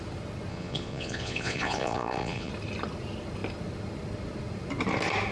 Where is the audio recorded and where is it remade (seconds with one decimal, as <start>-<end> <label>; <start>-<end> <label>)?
0.0-0.5 recorded; 0.5-2.5 remade; 2.5-5.3 recorded